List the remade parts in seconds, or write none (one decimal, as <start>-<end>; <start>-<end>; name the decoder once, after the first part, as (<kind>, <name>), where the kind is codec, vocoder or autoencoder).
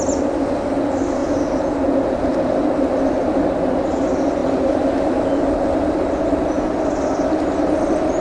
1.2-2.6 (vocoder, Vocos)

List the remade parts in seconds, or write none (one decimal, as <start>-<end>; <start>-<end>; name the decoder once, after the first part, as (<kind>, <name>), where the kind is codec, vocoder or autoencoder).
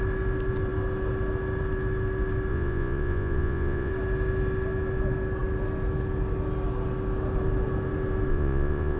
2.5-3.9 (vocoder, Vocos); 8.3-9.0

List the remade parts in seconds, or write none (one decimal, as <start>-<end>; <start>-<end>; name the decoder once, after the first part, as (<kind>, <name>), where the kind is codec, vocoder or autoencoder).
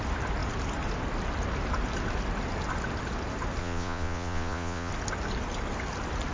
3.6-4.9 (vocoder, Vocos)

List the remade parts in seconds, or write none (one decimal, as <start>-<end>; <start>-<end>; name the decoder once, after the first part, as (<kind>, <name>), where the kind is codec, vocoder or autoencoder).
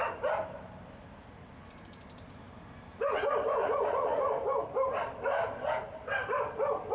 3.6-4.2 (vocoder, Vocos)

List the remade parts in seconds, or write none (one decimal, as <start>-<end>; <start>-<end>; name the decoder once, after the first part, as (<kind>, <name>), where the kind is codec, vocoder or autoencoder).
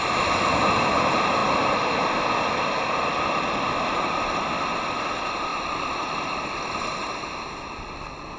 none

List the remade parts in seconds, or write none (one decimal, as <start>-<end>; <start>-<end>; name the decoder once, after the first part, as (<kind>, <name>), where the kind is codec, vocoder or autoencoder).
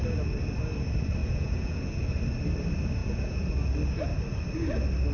1.2-2.0 (vocoder, Vocos); 3.0-3.5